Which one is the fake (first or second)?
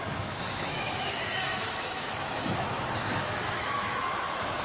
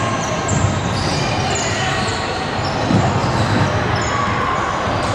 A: first